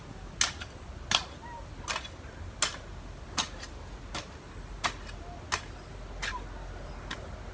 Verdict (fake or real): real